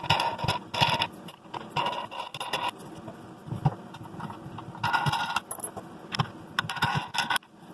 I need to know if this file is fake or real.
real